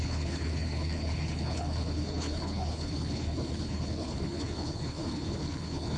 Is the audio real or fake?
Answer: fake